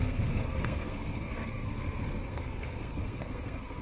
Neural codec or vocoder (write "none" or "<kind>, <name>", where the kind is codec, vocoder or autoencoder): codec, SNAC